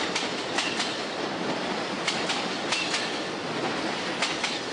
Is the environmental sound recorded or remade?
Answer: recorded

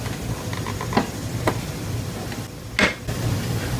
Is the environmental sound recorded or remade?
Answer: recorded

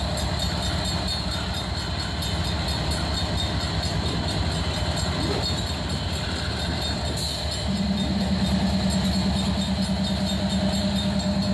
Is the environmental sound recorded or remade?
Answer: recorded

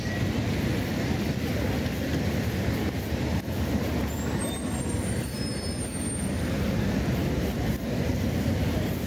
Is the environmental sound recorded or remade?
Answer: recorded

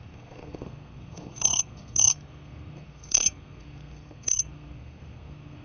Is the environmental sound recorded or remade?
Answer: remade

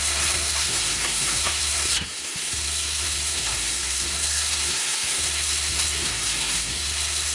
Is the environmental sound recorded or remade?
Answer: remade